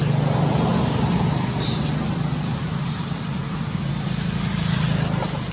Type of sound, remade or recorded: recorded